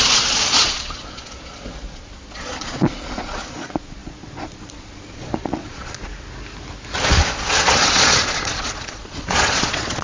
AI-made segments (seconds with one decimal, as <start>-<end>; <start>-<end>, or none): 0.0-6.1; 7.1-10.0